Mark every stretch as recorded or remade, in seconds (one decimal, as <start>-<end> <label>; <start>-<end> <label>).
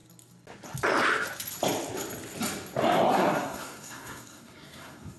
0.0-3.1 recorded; 3.1-5.2 remade